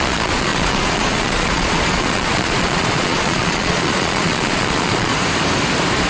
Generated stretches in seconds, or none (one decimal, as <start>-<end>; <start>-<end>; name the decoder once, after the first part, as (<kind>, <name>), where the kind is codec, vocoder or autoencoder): 0.0-5.1 (vocoder, Vocos)